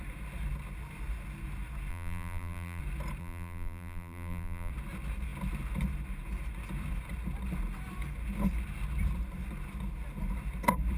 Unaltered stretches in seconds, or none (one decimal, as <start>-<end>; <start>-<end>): 0.0-1.9; 2.8-3.2; 4.7-11.0